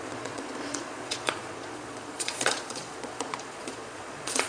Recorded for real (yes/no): no